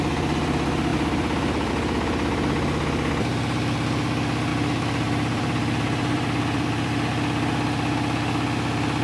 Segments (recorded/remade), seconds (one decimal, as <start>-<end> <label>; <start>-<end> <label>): 0.0-4.5 recorded; 4.5-6.9 remade; 6.9-9.0 recorded